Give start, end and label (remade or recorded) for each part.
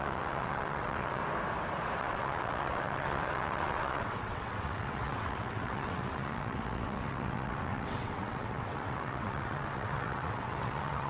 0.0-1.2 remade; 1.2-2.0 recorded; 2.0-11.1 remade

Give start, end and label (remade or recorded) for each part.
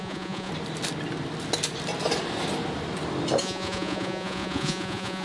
0.0-0.5 remade; 0.5-3.4 recorded; 3.4-5.2 remade